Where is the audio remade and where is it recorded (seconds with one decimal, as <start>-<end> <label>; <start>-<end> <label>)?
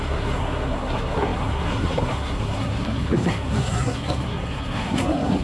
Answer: 0.0-5.4 remade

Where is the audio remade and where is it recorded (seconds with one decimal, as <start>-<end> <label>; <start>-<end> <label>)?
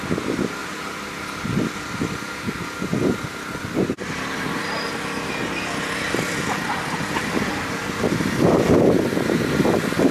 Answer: 0.0-0.6 recorded; 0.6-4.9 remade; 4.9-10.1 recorded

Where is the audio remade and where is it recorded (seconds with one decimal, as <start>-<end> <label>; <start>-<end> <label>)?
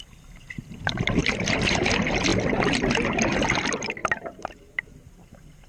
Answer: 0.0-1.2 recorded; 1.2-1.8 remade; 1.8-5.7 recorded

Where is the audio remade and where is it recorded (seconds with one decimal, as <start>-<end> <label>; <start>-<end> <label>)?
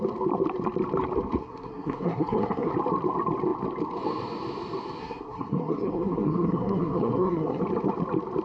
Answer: 0.0-1.4 recorded; 1.4-2.7 remade; 2.7-5.0 recorded; 5.0-7.6 remade; 7.6-8.4 recorded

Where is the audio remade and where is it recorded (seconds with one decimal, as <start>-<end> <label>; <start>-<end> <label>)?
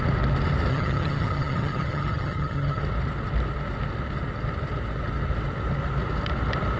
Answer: 0.0-0.7 recorded; 0.7-2.8 remade; 2.8-6.8 recorded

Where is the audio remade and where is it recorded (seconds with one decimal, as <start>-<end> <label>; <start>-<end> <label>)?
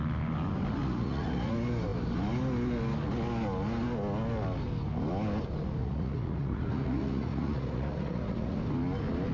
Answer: 0.0-0.8 recorded; 0.8-1.5 remade; 1.5-5.8 recorded; 5.8-8.6 remade; 8.6-9.3 recorded